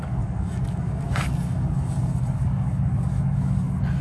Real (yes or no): no